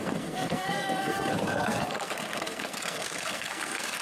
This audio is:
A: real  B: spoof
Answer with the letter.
B